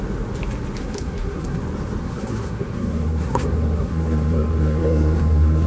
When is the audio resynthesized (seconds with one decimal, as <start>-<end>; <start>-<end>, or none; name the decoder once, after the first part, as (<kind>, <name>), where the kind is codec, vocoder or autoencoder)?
0.8-1.6 (codec, SNAC); 2.0-5.7